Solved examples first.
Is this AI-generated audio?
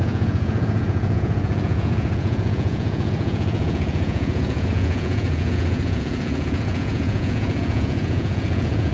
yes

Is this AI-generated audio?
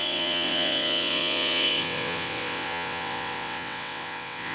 yes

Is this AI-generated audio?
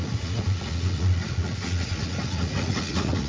yes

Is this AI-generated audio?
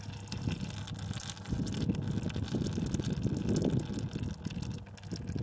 no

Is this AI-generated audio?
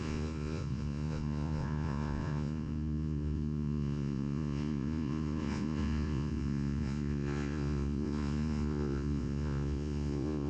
yes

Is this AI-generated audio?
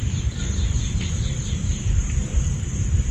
yes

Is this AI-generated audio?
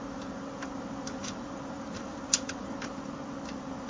yes